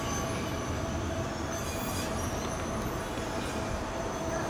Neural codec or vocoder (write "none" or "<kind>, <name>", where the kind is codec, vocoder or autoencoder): none